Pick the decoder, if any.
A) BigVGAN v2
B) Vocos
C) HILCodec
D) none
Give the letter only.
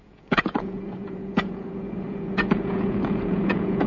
B